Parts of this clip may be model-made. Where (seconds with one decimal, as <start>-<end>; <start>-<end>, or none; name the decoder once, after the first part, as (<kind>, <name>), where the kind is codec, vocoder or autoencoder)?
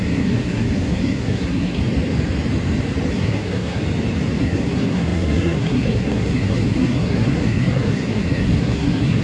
0.0-1.8 (codec, SNAC); 3.1-3.8; 4.4-9.2